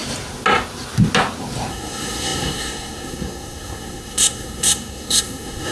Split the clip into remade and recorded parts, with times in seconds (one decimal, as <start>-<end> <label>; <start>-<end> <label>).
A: 0.0-1.7 recorded; 1.7-5.7 remade